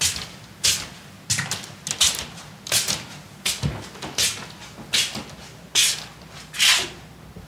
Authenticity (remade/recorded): recorded